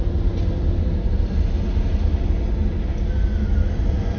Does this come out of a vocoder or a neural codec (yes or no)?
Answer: no